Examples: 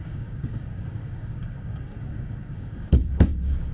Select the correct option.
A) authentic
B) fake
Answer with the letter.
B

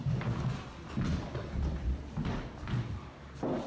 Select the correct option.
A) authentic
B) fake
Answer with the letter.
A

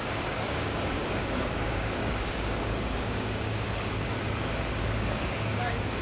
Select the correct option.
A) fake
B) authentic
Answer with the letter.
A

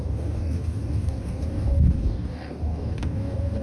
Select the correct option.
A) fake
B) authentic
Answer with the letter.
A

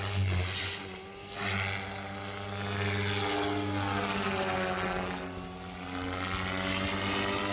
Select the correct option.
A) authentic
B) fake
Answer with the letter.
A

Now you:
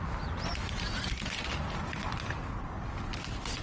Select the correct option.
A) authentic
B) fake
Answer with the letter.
A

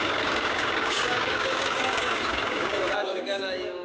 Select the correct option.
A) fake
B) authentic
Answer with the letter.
A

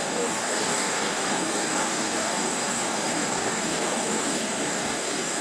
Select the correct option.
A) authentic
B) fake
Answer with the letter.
B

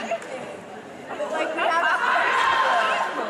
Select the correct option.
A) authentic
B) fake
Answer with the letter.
A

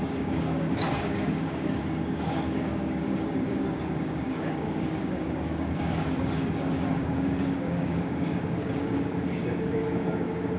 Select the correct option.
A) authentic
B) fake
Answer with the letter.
B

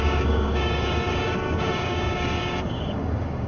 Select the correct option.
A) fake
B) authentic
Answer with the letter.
A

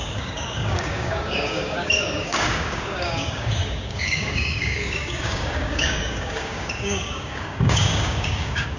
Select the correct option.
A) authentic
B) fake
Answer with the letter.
B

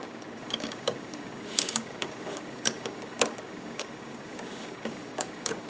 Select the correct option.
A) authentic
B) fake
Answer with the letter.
B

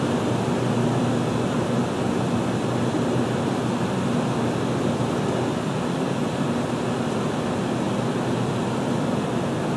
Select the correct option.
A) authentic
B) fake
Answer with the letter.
A